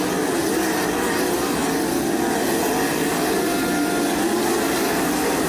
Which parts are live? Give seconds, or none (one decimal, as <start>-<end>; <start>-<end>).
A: 0.0-5.5